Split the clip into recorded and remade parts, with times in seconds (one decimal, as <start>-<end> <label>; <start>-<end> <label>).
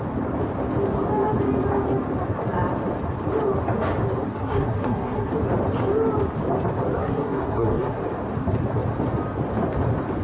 0.0-4.3 recorded; 4.3-5.3 remade; 5.3-7.0 recorded; 7.0-8.0 remade; 8.0-10.2 recorded